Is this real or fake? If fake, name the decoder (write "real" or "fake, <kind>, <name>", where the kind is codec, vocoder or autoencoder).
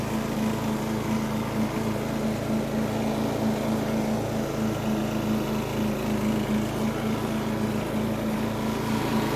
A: real